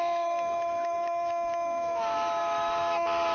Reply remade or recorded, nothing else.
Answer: remade